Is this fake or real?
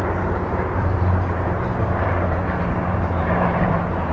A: fake